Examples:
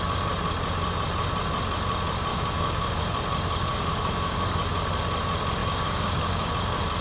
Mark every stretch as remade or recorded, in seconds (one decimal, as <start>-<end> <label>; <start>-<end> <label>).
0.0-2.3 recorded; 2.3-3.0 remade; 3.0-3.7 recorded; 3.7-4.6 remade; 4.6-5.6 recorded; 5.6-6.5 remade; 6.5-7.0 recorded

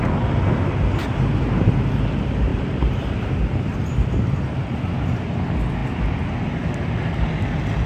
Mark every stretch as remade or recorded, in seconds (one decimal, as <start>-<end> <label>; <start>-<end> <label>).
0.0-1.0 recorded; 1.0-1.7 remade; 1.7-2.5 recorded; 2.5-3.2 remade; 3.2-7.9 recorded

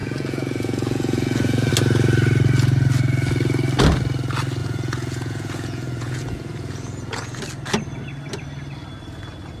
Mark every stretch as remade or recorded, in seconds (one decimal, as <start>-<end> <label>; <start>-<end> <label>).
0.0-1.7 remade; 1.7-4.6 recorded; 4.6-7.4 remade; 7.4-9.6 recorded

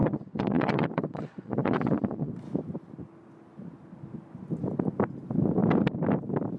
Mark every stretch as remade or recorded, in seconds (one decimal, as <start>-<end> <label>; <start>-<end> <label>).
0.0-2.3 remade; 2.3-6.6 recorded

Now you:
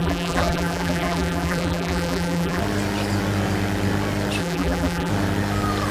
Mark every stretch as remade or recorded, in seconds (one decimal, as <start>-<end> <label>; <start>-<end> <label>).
0.0-2.6 remade; 2.6-4.4 recorded; 4.4-5.1 remade; 5.1-5.9 recorded

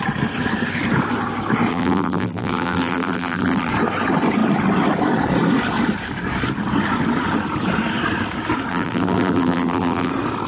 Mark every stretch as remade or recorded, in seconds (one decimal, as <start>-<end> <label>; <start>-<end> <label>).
0.0-1.7 recorded; 1.7-3.7 remade; 3.7-8.7 recorded; 8.7-10.1 remade; 10.1-10.5 recorded

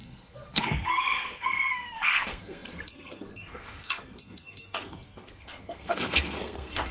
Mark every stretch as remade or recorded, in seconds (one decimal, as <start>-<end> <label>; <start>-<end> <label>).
0.0-6.9 remade

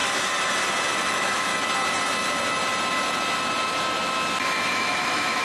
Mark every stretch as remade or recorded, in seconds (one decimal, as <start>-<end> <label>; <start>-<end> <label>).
0.0-1.1 recorded; 1.1-1.5 remade; 1.5-4.7 recorded; 4.7-5.4 remade